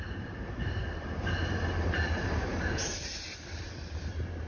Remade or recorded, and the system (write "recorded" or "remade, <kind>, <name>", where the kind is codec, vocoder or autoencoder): remade, vocoder, BigVGAN v2